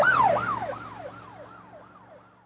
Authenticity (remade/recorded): recorded